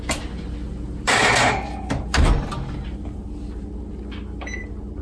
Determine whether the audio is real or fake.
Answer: real